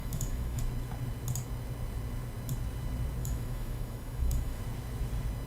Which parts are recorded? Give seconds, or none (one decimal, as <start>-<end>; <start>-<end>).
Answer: 0.6-3.2; 4.6-5.5